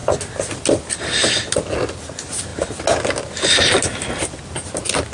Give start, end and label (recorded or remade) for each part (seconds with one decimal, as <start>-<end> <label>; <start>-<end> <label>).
0.0-5.1 recorded